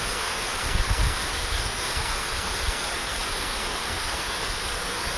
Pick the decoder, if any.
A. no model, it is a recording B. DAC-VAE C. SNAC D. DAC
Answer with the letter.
C